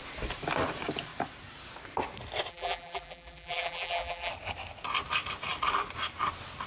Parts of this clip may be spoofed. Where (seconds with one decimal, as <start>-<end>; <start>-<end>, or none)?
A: 2.5-4.3